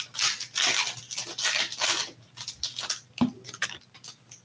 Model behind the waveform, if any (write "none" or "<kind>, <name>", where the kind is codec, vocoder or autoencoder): none